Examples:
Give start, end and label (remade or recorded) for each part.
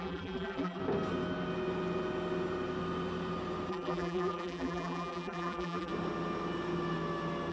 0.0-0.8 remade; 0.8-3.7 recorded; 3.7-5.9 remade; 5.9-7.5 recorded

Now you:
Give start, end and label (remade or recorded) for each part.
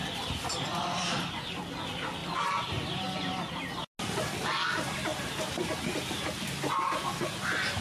0.0-1.7 remade; 1.7-2.2 recorded; 2.2-3.5 remade; 3.5-5.1 recorded; 5.1-6.3 remade; 6.3-7.8 recorded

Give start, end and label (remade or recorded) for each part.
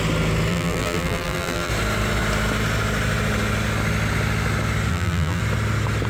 0.0-0.5 recorded; 0.5-1.7 remade; 1.7-4.9 recorded; 4.9-5.4 remade; 5.4-6.1 recorded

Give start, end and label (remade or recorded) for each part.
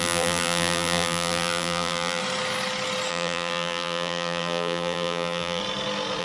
0.0-2.2 remade; 2.2-3.1 recorded; 3.1-5.6 remade; 5.6-6.2 recorded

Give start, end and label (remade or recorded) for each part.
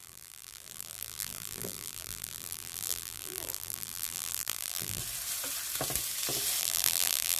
0.0-5.0 remade; 5.0-6.6 recorded; 6.6-7.4 remade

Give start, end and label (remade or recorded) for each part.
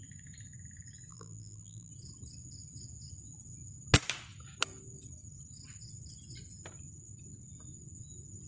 0.0-1.1 recorded; 1.1-1.9 remade; 1.9-8.5 recorded